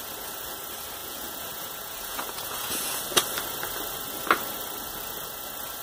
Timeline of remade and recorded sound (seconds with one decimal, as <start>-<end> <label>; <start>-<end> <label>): 0.0-1.0 recorded; 1.0-3.0 remade; 3.0-5.8 recorded